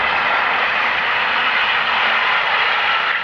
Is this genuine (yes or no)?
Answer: yes